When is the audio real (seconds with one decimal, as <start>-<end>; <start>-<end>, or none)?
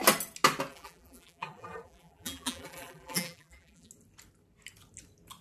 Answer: 0.0-0.7; 3.9-5.4